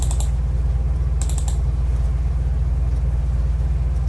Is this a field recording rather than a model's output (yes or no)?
yes